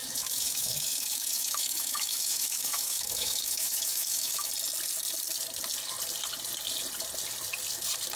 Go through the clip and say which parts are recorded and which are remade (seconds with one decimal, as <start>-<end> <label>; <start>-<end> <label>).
0.0-4.5 remade; 4.5-8.2 recorded

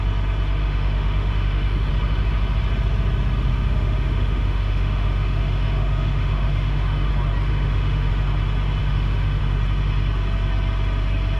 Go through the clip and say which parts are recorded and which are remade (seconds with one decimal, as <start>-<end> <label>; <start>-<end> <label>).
0.0-0.6 recorded; 0.6-1.9 remade; 1.9-3.5 recorded; 3.5-7.1 remade; 7.1-7.5 recorded; 7.5-8.1 remade; 8.1-8.8 recorded; 8.8-9.4 remade; 9.4-11.4 recorded

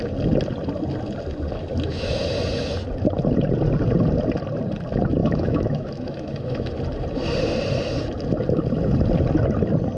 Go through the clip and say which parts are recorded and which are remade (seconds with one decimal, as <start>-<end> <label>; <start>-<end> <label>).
0.0-5.2 recorded; 5.2-6.7 remade; 6.7-10.0 recorded

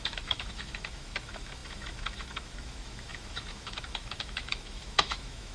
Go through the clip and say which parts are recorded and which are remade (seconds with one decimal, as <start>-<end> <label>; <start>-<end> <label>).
0.0-5.5 remade

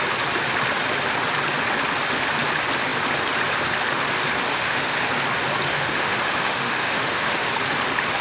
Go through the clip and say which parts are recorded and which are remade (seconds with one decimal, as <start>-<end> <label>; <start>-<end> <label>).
0.0-4.5 recorded; 4.5-5.1 remade; 5.1-5.7 recorded; 5.7-7.5 remade; 7.5-8.2 recorded

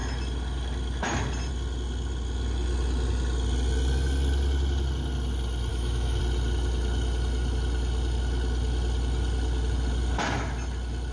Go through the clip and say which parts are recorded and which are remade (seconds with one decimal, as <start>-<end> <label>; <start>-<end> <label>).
0.0-5.7 recorded; 5.7-6.2 remade; 6.2-11.1 recorded

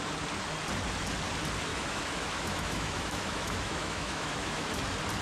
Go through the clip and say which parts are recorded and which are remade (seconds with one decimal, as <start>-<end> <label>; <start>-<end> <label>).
0.0-1.7 recorded; 1.7-4.8 remade; 4.8-5.2 recorded

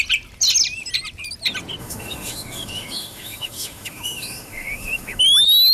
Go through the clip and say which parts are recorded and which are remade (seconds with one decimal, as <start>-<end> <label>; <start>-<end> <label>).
0.0-1.8 recorded; 1.8-5.2 remade; 5.2-5.7 recorded